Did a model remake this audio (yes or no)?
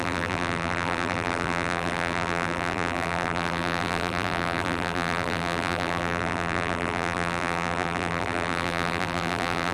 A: yes